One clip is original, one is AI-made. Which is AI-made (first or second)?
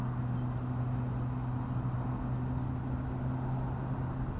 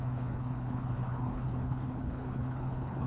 second